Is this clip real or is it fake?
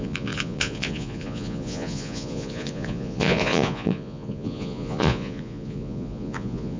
fake